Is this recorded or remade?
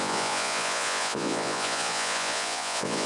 remade